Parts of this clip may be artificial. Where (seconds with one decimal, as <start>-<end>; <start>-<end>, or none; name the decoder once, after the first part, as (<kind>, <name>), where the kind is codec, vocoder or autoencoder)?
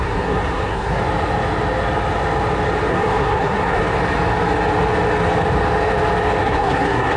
0.0-1.0 (codec, SNAC); 2.9-3.8; 6.4-7.2